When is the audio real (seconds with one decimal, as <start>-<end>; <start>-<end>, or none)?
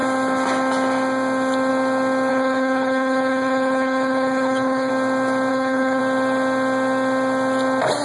0.0-2.3; 4.9-5.5; 6.0-8.0